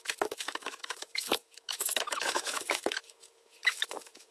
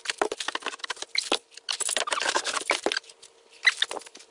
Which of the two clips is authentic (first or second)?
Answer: second